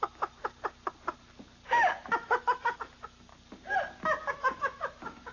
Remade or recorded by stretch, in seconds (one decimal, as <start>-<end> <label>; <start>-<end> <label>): 0.0-0.4 remade; 0.4-1.7 recorded; 1.7-3.3 remade; 3.3-4.3 recorded; 4.3-5.3 remade